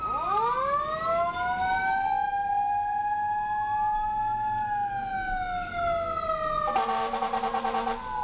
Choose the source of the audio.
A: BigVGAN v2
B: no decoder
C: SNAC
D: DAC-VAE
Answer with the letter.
B